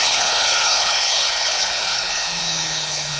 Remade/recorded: remade